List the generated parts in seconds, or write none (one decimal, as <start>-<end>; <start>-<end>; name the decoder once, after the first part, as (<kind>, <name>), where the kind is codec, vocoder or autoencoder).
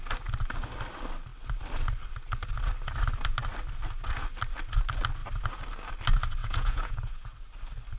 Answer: 6.4-7.3 (vocoder, Vocos)